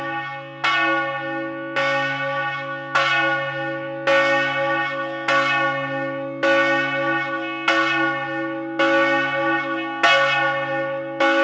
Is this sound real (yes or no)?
yes